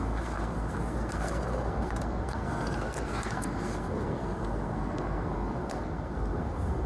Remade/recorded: remade